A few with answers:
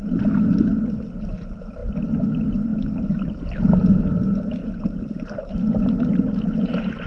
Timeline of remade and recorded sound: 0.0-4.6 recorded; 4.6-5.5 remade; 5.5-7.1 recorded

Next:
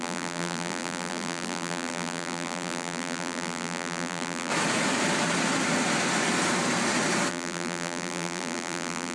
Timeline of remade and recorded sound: 0.0-4.5 remade; 4.5-7.3 recorded; 7.3-9.1 remade

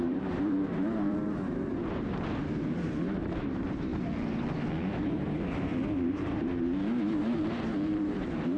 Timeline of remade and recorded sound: 0.0-3.9 remade; 3.9-5.0 recorded; 5.0-5.7 remade; 5.7-6.3 recorded; 6.3-8.6 remade

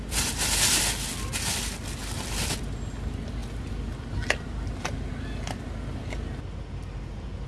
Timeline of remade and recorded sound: 0.0-7.5 recorded

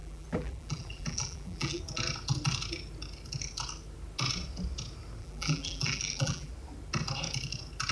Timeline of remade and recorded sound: 0.0-1.8 remade; 1.8-5.2 recorded; 5.2-6.5 remade; 6.5-7.9 recorded

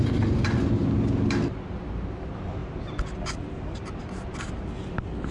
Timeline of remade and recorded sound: 0.0-5.3 recorded

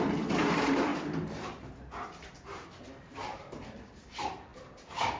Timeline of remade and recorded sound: 0.0-0.9 remade; 0.9-3.1 recorded; 3.1-5.2 remade

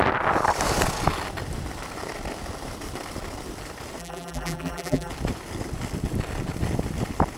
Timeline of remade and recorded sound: 0.0-4.0 recorded; 4.0-5.1 remade; 5.1-7.4 recorded